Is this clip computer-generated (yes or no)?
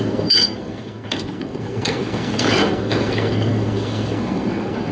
yes